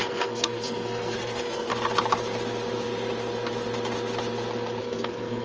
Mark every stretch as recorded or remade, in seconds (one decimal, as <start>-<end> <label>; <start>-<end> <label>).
0.0-1.7 remade; 1.7-4.8 recorded; 4.8-5.4 remade